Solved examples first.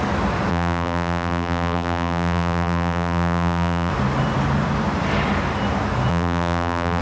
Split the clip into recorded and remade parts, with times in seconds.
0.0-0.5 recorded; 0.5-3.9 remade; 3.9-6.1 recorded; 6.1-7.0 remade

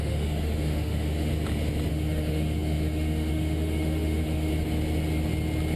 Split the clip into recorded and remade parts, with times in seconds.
0.0-1.3 remade; 1.3-1.9 recorded; 1.9-4.5 remade; 4.5-5.8 recorded

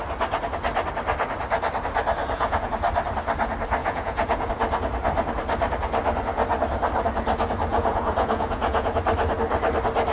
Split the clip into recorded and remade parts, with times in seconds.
0.0-2.2 recorded; 2.2-2.7 remade; 2.7-3.8 recorded; 3.8-4.5 remade; 4.5-7.7 recorded; 7.7-9.0 remade; 9.0-10.1 recorded

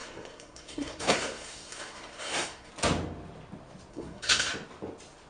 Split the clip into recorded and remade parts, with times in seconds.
0.0-2.7 remade; 2.7-3.9 recorded; 3.9-4.5 remade; 4.5-5.3 recorded

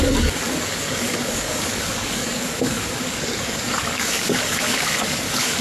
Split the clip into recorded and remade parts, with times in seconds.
0.0-5.6 remade

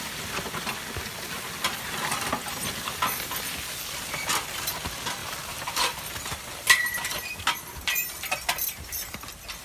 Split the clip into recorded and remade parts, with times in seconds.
0.0-5.2 recorded; 5.2-6.0 remade; 6.0-9.6 recorded

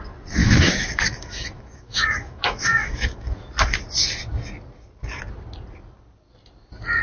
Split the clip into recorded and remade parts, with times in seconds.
0.0-0.4 recorded; 0.4-3.5 remade; 3.5-7.0 recorded

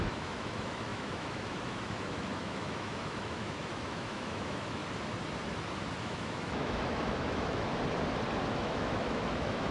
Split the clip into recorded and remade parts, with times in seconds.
0.0-4.8 remade; 4.8-6.0 recorded; 6.0-7.7 remade; 7.7-8.5 recorded; 8.5-9.7 remade